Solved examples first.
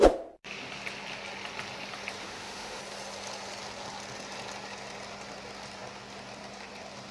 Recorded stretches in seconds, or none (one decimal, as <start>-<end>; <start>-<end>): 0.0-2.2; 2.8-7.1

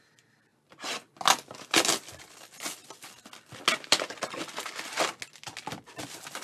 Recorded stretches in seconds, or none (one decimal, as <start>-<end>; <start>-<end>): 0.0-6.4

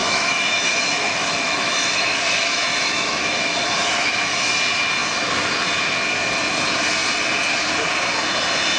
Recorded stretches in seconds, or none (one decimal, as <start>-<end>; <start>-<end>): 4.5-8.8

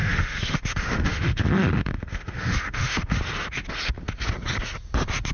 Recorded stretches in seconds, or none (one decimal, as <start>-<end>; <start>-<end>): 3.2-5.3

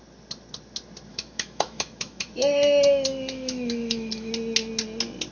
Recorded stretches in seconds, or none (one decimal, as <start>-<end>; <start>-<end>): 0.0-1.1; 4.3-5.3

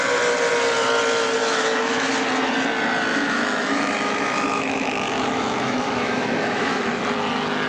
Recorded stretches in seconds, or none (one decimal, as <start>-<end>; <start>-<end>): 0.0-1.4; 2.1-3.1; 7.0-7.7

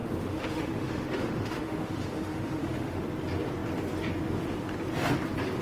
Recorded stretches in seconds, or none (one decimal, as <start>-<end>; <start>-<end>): 3.0-5.6